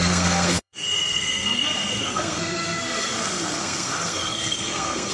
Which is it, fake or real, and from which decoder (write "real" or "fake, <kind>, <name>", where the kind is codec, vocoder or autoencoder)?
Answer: fake, codec, SNAC